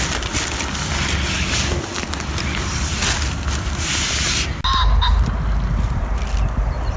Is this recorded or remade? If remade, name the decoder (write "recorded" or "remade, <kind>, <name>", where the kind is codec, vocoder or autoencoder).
recorded